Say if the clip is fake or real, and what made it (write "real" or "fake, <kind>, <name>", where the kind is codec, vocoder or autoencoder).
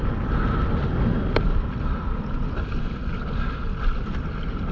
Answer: real